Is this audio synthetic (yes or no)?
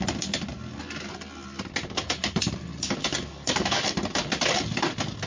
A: no